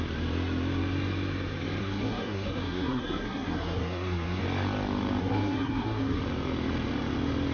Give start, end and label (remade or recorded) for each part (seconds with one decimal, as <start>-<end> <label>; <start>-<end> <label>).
0.0-1.8 recorded; 1.8-4.4 remade; 4.4-5.2 recorded; 5.2-6.2 remade; 6.2-7.5 recorded